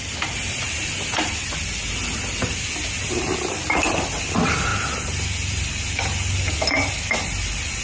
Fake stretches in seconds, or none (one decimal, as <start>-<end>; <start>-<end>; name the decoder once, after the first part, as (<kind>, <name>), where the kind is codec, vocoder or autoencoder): none